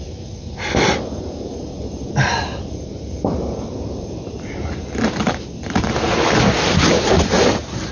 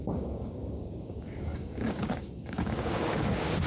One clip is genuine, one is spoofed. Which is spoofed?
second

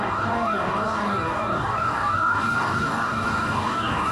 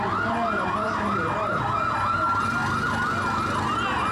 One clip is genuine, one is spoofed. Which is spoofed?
first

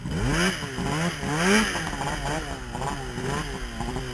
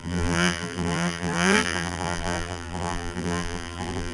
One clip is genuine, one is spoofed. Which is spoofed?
second